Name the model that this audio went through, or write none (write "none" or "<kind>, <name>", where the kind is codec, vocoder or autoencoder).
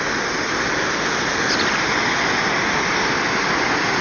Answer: none